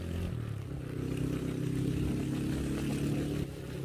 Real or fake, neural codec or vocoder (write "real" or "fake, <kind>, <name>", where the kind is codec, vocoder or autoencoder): real